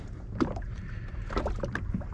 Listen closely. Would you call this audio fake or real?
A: real